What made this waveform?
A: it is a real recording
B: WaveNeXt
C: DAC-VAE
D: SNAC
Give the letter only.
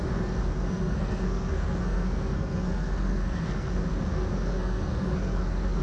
D